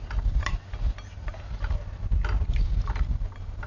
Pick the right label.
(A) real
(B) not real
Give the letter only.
A